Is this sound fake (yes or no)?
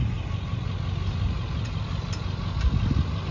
no